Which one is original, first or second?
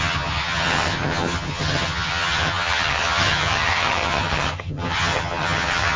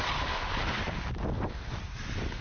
second